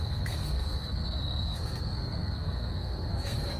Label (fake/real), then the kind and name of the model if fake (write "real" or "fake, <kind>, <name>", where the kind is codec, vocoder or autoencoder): fake, codec, SNAC